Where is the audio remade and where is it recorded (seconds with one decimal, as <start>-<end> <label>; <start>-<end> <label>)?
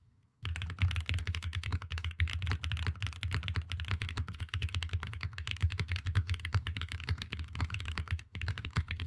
0.0-0.5 remade; 0.5-1.2 recorded; 1.2-2.3 remade; 2.3-3.9 recorded; 3.9-9.1 remade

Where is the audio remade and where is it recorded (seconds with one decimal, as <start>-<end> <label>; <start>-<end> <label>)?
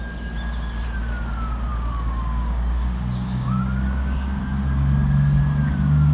0.0-1.7 recorded; 1.7-5.4 remade; 5.4-6.1 recorded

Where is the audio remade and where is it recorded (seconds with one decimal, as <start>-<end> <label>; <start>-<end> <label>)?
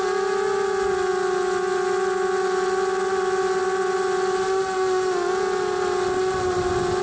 0.0-7.0 recorded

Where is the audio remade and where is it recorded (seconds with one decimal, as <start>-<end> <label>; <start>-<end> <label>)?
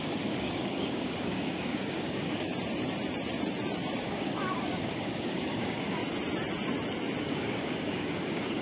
0.0-2.5 remade; 2.5-4.0 recorded; 4.0-6.0 remade; 6.0-7.2 recorded; 7.2-8.6 remade